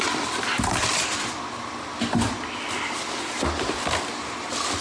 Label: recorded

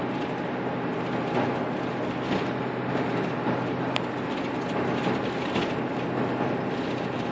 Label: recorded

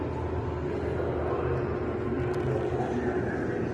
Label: recorded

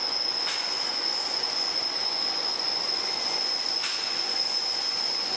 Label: remade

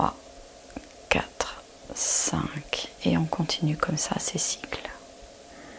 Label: recorded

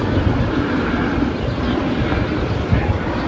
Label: recorded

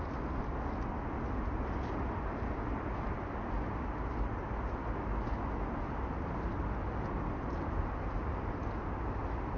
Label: recorded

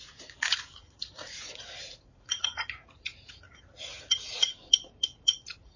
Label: remade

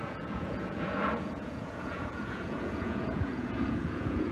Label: remade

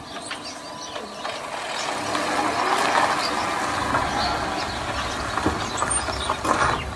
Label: recorded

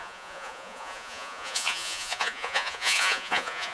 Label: remade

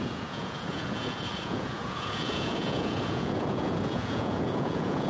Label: remade